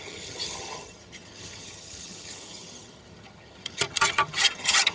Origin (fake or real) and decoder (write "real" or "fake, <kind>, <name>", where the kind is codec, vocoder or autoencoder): fake, vocoder, HiFi-GAN